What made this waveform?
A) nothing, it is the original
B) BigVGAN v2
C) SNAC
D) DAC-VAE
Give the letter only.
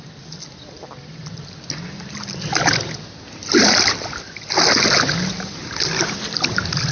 A